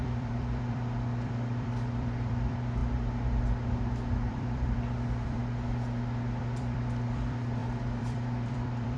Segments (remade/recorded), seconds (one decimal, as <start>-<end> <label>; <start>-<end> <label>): 0.0-2.8 remade; 2.8-4.3 recorded; 4.3-5.4 remade; 5.4-6.4 recorded; 6.4-9.0 remade